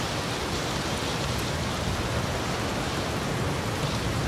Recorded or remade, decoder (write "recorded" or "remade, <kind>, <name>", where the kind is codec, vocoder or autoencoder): recorded